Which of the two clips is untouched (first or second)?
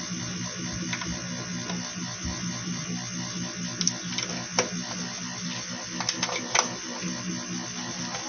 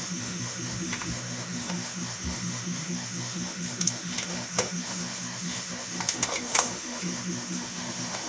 first